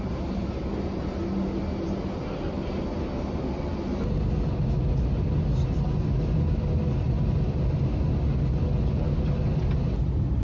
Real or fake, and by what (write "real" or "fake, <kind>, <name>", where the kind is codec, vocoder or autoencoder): real